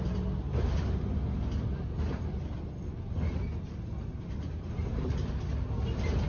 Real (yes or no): yes